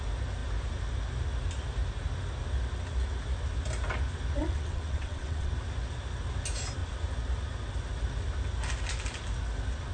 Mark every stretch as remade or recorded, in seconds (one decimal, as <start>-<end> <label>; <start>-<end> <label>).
0.0-4.4 recorded; 4.4-5.5 remade; 5.5-9.9 recorded